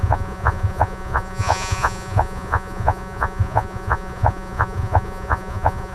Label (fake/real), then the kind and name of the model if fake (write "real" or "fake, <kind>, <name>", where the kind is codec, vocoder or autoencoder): fake, vocoder, Vocos